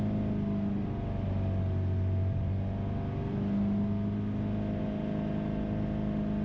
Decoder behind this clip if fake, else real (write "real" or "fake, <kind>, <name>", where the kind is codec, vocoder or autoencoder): real